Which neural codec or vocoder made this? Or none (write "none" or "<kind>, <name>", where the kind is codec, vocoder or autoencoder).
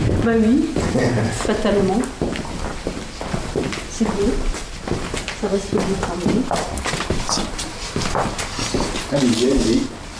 none